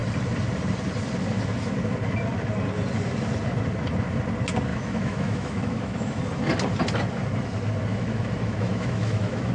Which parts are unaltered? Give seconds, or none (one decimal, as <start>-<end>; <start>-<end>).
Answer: 0.0-4.7; 6.2-7.9